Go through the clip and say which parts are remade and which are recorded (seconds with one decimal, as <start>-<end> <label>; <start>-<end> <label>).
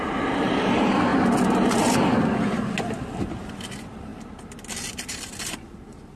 0.0-1.1 remade; 1.1-3.2 recorded; 3.2-4.1 remade; 4.1-4.9 recorded; 4.9-6.2 remade